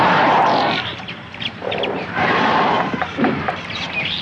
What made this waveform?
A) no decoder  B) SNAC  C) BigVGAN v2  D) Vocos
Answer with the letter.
C